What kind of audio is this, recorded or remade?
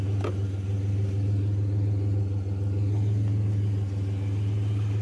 recorded